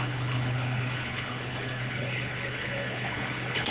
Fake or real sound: fake